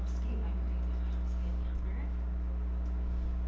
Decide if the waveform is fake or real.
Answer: real